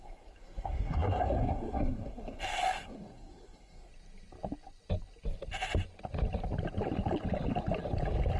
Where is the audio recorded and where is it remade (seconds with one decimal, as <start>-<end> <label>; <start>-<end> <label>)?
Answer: 0.0-3.9 remade; 3.9-8.4 recorded